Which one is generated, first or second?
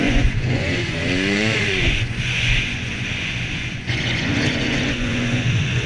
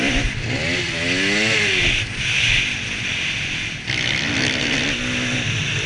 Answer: first